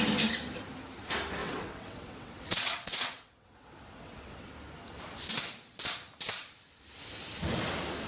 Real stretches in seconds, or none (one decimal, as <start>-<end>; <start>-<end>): 0.0-1.4; 4.5-8.1